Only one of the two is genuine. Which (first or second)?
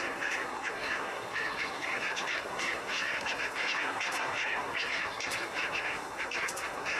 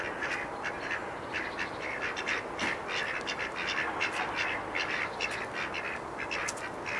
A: second